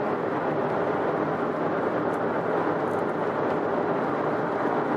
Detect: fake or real real